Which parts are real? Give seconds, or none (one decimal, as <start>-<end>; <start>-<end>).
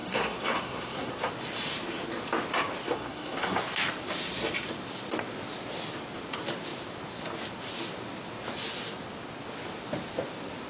1.3-2.8; 3.6-10.7